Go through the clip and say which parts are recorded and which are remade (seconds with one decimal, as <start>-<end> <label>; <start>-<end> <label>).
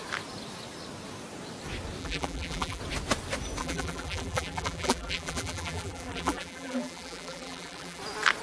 0.0-2.0 recorded; 2.0-2.8 remade; 2.8-3.6 recorded; 3.6-8.0 remade; 8.0-8.4 recorded